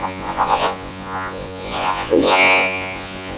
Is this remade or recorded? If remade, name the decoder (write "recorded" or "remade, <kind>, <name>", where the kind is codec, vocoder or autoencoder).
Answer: remade, vocoder, Vocos